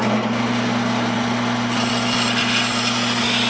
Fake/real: real